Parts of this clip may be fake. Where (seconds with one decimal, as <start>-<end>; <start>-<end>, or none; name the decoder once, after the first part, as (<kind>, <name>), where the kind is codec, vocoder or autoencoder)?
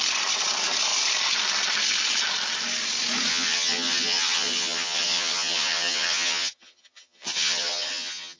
3.3-8.4 (vocoder, HiFi-GAN)